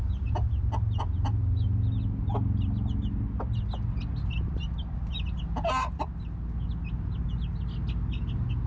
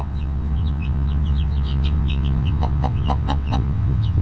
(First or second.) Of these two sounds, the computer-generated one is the second